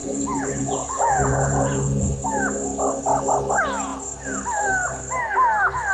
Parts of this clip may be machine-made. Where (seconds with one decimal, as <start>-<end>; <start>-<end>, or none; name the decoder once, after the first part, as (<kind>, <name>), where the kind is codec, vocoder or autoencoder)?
0.0-2.1 (vocoder, Vocos)

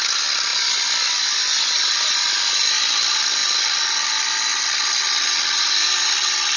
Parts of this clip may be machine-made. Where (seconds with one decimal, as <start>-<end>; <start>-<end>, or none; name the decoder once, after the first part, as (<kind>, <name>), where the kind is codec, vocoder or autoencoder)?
none

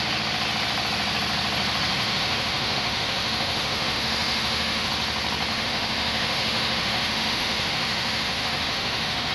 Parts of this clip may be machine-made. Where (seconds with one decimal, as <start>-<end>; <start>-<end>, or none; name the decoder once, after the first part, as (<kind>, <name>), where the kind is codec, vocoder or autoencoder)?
1.9-4.9 (autoencoder, DAC-VAE); 5.5-9.3